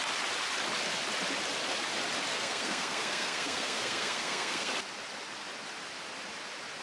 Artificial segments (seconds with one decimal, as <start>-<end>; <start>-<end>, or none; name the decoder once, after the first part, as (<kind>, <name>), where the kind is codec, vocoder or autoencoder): 2.3-4.7 (codec, SNAC)